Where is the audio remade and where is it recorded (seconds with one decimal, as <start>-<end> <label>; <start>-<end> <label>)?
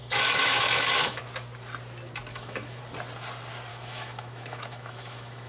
0.0-1.2 remade; 1.2-2.3 recorded; 2.3-2.8 remade; 2.8-3.7 recorded; 3.7-5.5 remade